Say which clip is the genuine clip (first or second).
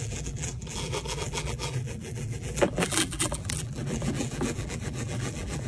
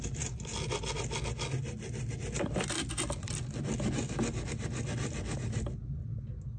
second